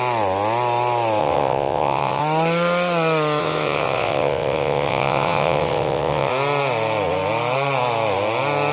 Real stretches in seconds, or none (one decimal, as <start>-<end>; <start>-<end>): 0.0-1.2; 2.2-3.4; 6.3-8.7